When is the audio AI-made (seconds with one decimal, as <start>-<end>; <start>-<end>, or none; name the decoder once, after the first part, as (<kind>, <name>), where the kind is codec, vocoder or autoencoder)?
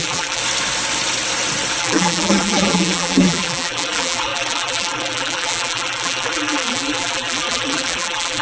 0.0-0.4 (vocoder, BigVGAN v2); 1.8-8.4